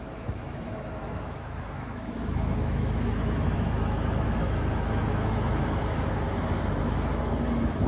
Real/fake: fake